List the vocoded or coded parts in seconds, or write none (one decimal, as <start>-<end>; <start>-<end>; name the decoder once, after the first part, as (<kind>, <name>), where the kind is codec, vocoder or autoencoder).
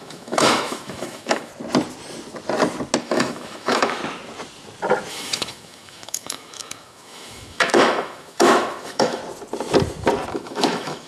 0.0-1.5 (autoencoder, DAC-VAE); 3.0-4.0; 5.1-9.2; 10.3-11.1